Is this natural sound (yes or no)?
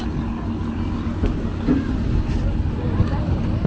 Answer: yes